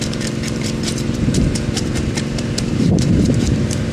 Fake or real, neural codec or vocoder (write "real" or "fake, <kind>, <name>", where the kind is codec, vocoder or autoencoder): fake, vocoder, BigVGAN v2